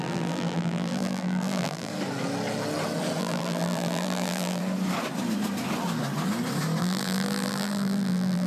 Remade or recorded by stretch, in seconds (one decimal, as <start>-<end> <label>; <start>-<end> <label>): 0.0-1.9 remade; 1.9-3.2 recorded; 3.2-4.6 remade; 4.6-6.8 recorded; 6.8-8.5 remade